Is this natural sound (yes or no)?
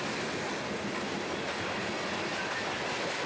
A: yes